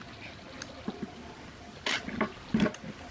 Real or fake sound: real